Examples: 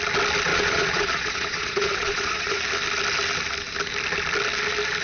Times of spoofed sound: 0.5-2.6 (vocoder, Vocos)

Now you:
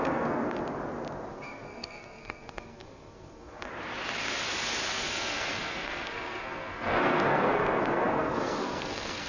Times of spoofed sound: 0.0-0.6 (codec, SNAC); 1.3-3.7; 4.9-9.3

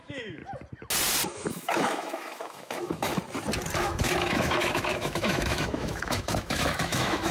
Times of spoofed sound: 0.0-0.4 (autoencoder, DAC-VAE); 1.3-3.1; 3.8-7.3